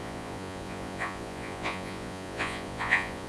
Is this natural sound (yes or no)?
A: no